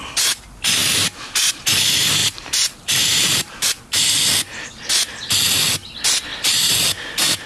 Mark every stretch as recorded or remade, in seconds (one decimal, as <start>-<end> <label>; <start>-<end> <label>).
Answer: 0.0-2.2 recorded; 2.2-3.7 remade; 3.7-6.3 recorded; 6.3-7.5 remade